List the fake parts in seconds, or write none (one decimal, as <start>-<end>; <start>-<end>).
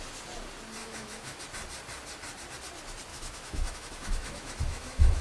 0.8-1.4; 3.1-5.2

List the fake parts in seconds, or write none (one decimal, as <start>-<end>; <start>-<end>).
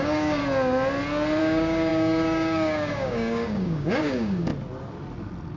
0.0-0.4; 1.4-4.5